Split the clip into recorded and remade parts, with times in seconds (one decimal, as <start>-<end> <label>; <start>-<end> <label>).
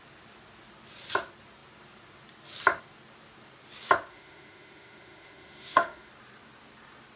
0.0-4.1 recorded; 4.1-6.1 remade; 6.1-7.2 recorded